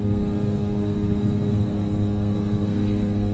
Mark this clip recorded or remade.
remade